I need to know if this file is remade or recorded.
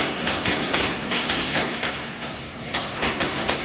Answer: remade